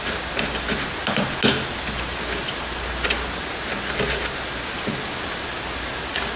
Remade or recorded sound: recorded